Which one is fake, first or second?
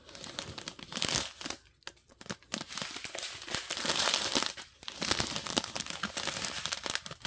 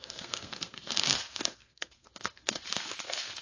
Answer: second